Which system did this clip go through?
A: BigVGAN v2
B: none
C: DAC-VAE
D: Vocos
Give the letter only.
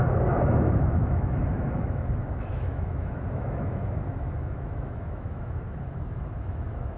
C